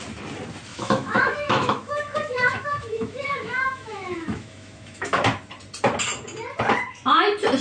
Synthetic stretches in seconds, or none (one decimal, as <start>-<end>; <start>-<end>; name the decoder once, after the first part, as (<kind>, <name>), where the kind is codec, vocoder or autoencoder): 0.7-5.2 (autoencoder, DAC-VAE)